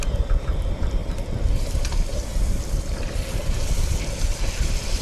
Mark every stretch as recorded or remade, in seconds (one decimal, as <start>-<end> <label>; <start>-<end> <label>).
0.0-1.0 recorded; 1.0-4.0 remade; 4.0-5.0 recorded